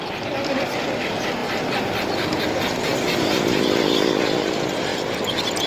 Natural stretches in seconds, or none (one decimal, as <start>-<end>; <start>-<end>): 0.0-5.7